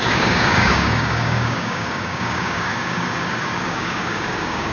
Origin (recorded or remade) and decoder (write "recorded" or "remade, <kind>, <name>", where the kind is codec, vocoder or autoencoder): remade, codec, DAC